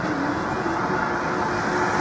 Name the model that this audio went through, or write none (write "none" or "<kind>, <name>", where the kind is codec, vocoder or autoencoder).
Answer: none